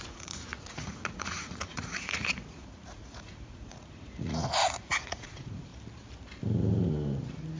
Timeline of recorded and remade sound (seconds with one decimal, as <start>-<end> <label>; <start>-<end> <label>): 0.0-5.7 remade; 5.7-7.6 recorded